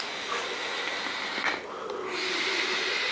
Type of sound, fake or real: real